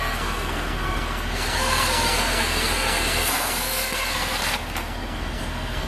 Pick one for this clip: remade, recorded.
remade